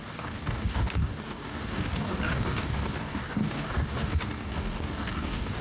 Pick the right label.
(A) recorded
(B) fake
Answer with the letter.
B